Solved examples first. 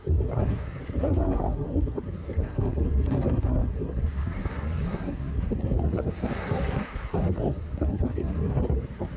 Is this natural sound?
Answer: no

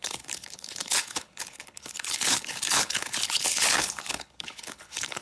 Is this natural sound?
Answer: no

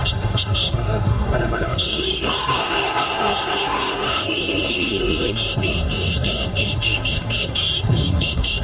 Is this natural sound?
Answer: no